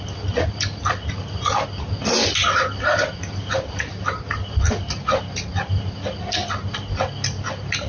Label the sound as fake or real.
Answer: real